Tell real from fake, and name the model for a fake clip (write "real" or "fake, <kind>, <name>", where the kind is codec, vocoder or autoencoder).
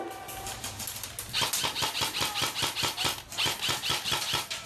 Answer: real